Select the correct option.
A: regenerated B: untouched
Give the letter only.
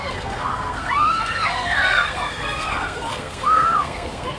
A